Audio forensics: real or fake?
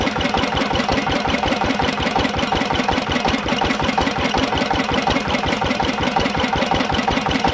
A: fake